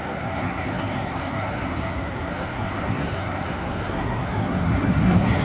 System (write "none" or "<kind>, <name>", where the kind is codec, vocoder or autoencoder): codec, SNAC